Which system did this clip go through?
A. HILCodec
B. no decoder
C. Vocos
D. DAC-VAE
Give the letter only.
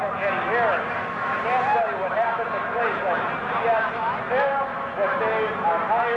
B